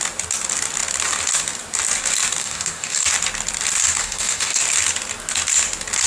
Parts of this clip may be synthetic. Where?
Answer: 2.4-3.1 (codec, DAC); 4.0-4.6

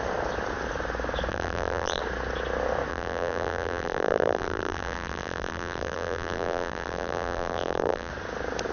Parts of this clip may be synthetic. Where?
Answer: 1.3-2.0 (vocoder, BigVGAN v2); 2.9-8.1

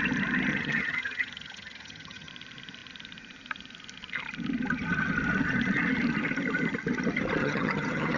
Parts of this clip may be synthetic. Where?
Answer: 0.5-2.3 (vocoder, HiFi-GAN); 7.4-8.2

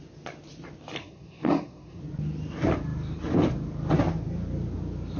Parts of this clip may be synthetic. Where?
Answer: 1.0-2.0 (codec, SNAC)